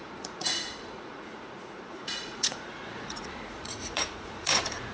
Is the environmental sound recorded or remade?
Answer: remade